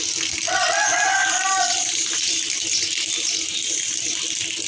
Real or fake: real